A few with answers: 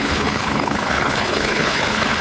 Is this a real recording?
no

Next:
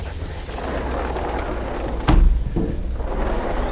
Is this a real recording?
yes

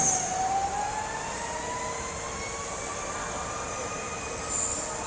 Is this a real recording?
yes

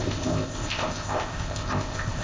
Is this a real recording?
no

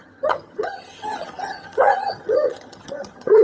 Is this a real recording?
no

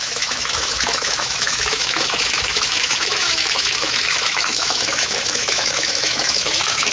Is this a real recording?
no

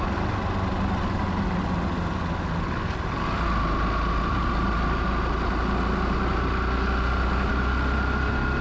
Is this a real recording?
yes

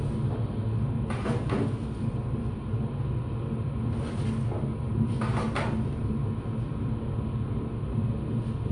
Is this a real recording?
yes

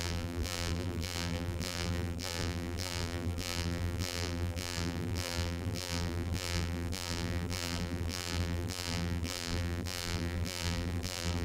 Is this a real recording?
no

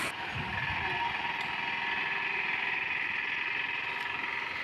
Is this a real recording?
yes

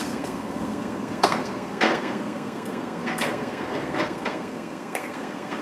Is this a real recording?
no